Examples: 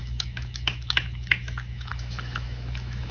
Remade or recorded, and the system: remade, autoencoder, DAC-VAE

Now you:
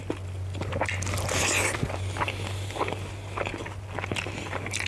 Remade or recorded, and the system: recorded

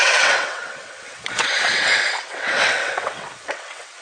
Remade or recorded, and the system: remade, vocoder, WaveNeXt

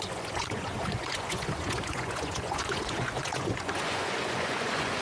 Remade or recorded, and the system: remade, vocoder, Vocos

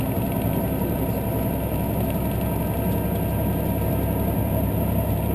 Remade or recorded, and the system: recorded